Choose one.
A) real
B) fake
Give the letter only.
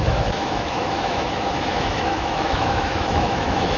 B